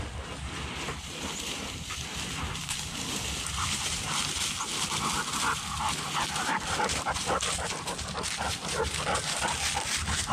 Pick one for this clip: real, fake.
real